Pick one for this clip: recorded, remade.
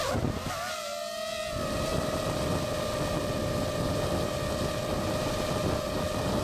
recorded